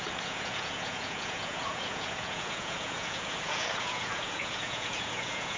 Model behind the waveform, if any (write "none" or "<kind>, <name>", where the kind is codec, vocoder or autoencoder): vocoder, Vocos